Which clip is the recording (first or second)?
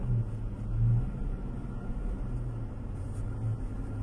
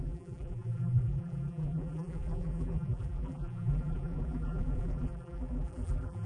first